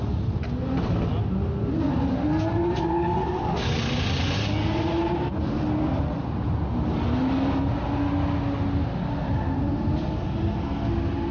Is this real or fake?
real